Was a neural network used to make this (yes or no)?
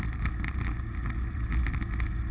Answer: no